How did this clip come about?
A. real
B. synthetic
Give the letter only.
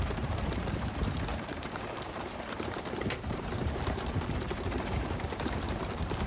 B